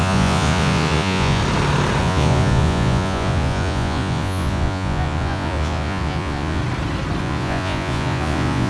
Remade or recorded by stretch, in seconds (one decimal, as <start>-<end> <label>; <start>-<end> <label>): 0.0-1.4 remade; 1.4-2.0 recorded; 2.0-6.6 remade; 6.6-7.2 recorded; 7.2-8.7 remade